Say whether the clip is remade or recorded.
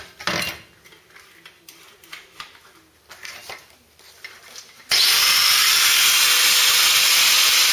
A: recorded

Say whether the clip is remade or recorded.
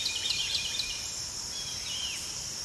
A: remade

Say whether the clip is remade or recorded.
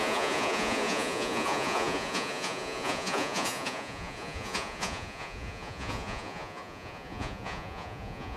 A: remade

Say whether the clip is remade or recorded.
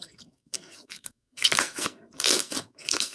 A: remade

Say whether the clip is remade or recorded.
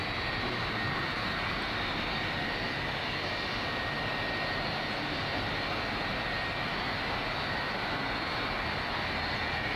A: recorded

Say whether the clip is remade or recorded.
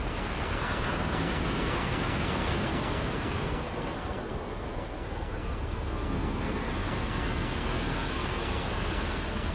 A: remade